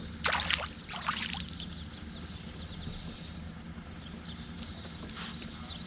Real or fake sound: real